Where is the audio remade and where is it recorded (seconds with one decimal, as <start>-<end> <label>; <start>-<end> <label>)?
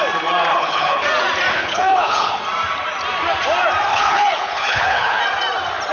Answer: 0.0-0.5 recorded; 0.5-1.0 remade; 1.0-1.5 recorded; 1.5-2.4 remade; 2.4-3.9 recorded; 3.9-5.2 remade; 5.2-5.9 recorded